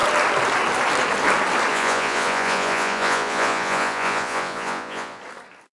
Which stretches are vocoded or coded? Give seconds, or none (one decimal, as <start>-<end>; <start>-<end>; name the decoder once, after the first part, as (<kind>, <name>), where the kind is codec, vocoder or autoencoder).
1.7-5.2 (vocoder, Vocos)